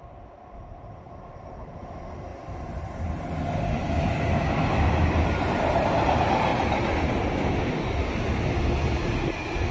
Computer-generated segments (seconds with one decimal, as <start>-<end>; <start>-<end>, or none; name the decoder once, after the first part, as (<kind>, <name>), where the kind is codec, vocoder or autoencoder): none